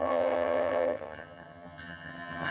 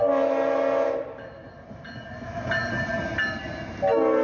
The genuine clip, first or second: second